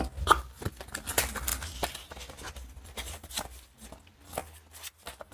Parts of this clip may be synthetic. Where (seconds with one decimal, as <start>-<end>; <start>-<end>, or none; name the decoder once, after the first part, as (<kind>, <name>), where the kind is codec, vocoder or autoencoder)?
none